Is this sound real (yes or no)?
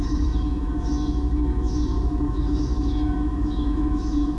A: no